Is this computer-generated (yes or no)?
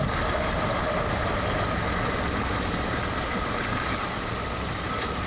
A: no